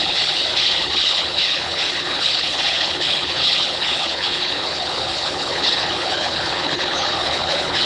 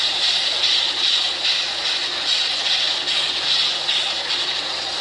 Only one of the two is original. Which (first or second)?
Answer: second